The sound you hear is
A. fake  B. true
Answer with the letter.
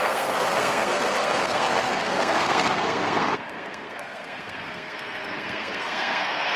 A